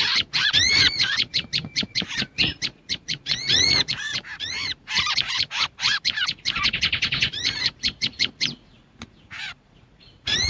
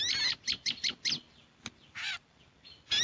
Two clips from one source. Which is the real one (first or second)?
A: second